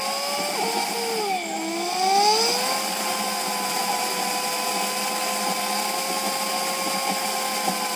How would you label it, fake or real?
real